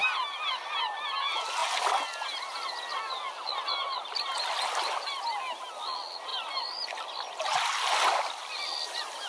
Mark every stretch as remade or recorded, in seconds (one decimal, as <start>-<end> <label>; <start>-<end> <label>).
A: 0.0-9.3 recorded